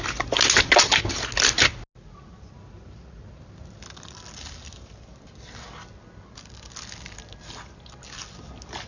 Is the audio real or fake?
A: real